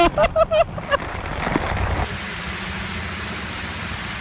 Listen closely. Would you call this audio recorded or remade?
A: recorded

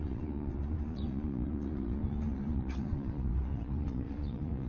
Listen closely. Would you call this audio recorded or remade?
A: remade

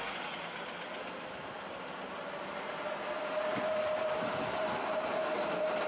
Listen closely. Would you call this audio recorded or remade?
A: recorded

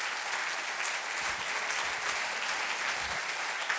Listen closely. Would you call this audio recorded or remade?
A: recorded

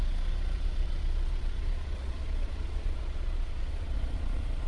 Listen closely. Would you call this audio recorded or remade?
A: remade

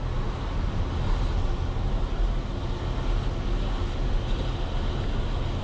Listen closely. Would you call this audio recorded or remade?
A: recorded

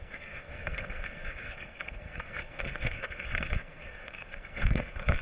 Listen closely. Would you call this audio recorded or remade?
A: remade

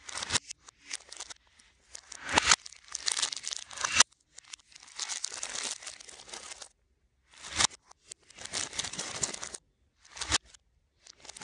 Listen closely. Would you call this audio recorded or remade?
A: recorded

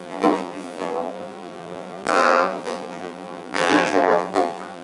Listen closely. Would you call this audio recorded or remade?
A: remade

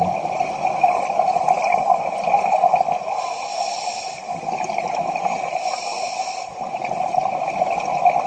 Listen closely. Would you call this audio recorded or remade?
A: recorded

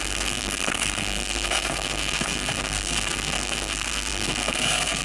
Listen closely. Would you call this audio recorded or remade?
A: remade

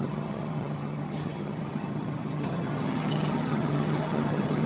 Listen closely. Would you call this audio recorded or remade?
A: remade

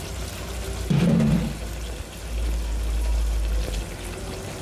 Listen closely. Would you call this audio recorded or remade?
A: recorded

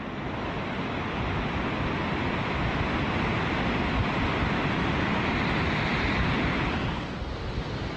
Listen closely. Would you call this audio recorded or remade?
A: recorded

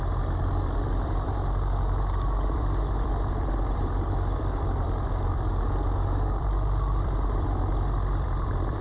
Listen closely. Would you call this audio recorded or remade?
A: remade